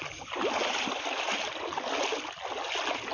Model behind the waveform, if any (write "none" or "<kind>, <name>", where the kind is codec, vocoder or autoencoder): none